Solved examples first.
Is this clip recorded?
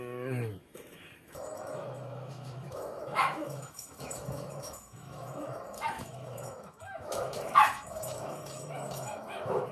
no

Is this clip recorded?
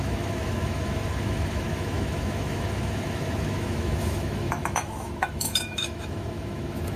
no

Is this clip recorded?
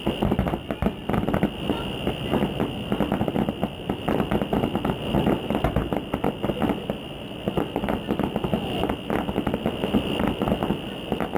yes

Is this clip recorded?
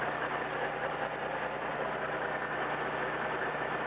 yes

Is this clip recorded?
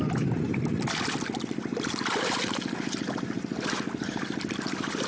yes